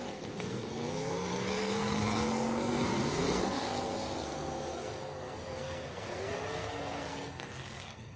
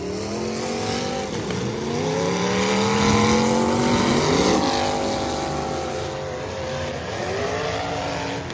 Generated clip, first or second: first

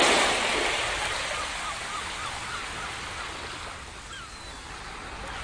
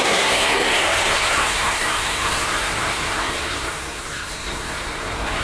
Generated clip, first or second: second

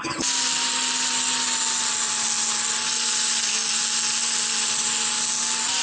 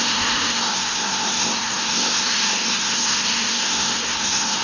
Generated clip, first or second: second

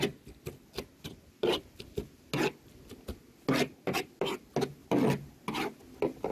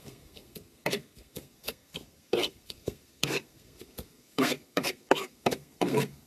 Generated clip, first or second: second